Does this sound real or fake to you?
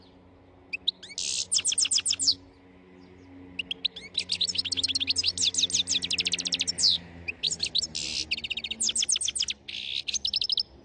real